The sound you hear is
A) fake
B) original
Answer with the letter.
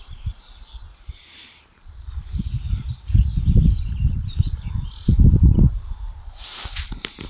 A